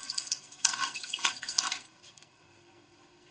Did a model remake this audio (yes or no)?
yes